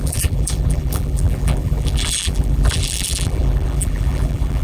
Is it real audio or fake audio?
fake